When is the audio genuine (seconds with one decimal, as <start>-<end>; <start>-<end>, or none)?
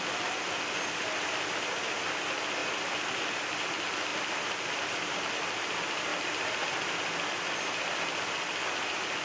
0.0-4.1; 4.8-9.2